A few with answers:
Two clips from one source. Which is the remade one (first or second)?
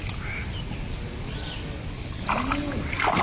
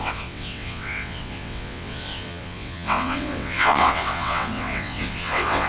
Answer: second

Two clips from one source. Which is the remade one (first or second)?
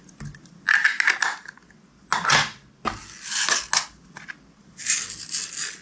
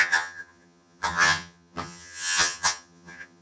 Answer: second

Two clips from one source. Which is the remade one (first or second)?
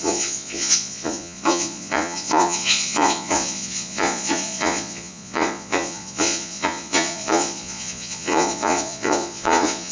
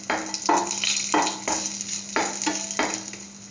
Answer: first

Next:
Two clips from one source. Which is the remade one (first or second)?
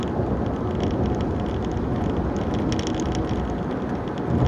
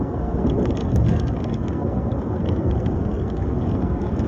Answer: second